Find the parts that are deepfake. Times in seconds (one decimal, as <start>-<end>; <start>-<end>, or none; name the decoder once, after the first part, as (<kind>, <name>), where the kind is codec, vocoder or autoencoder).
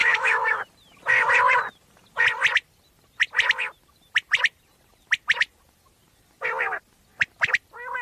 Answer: 0.0-0.6 (autoencoder, DAC-VAE)